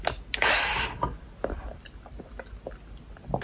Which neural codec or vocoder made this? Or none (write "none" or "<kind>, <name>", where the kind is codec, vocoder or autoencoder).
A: none